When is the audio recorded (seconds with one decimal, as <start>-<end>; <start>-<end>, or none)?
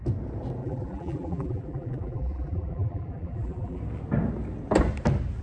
0.0-0.6; 3.8-5.4